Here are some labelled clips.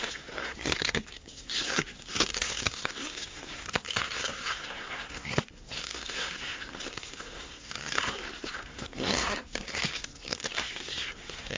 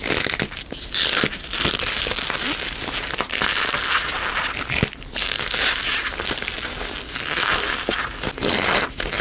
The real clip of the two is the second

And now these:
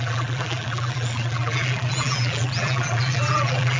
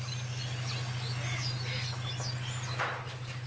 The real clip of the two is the second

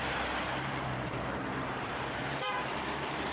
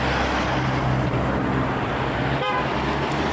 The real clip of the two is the second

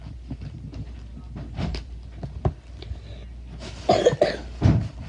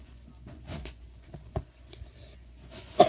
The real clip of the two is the first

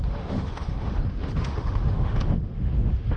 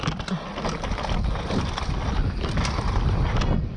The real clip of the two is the second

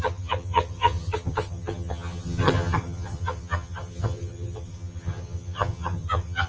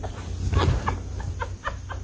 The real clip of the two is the second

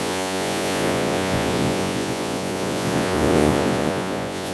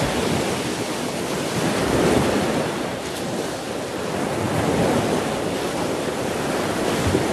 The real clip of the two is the second